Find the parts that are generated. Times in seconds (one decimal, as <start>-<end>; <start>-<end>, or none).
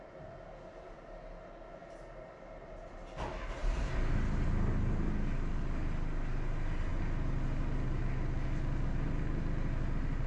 none